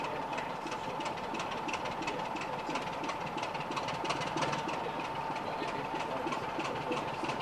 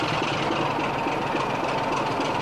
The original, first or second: second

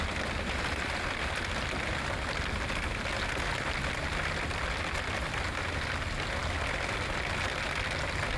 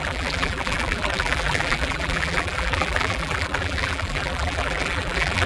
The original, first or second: first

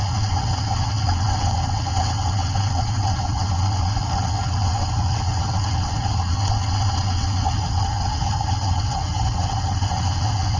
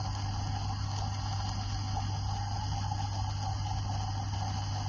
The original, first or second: second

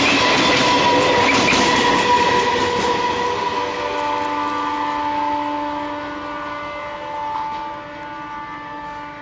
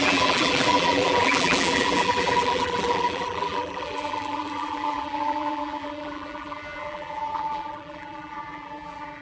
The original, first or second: first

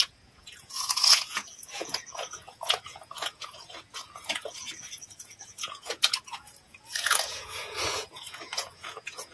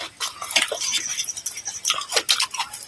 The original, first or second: second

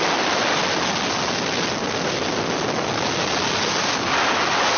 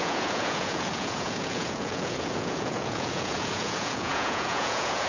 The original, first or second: first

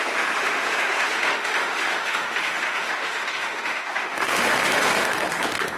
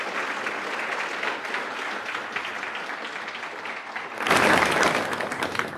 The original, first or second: second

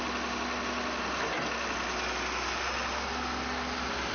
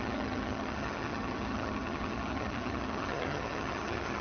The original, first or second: first